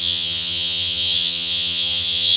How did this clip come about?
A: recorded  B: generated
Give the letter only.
B